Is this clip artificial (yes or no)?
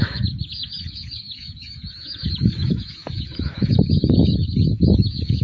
yes